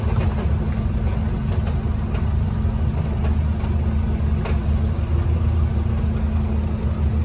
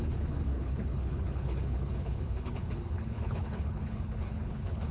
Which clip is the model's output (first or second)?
second